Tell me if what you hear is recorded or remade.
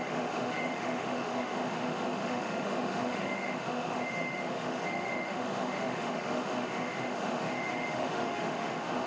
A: remade